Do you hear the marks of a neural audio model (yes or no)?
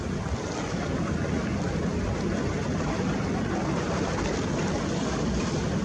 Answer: yes